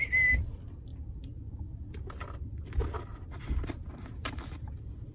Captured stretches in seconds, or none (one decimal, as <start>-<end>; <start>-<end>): 0.0-5.1